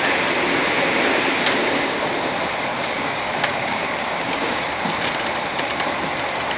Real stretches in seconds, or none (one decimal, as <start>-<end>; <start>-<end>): 0.0-1.6; 2.1-2.7; 4.6-6.6